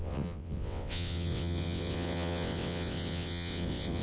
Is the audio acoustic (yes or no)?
no